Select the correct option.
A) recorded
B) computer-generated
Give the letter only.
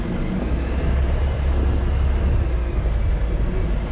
A